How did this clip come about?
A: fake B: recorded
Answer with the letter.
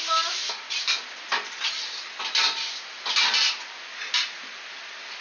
B